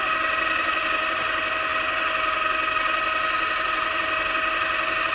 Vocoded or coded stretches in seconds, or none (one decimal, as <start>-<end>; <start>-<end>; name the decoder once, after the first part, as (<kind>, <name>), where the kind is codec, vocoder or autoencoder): none